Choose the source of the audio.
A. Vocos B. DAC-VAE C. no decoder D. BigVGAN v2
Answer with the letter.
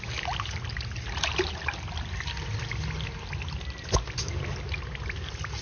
C